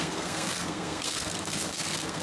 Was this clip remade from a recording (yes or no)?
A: yes